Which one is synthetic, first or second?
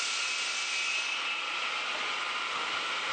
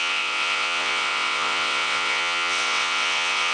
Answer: second